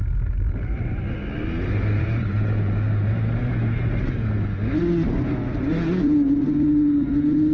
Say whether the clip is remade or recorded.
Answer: recorded